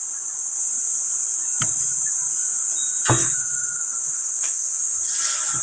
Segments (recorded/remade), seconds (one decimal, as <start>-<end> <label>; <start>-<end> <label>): 0.0-3.2 recorded; 3.2-5.0 remade; 5.0-5.6 recorded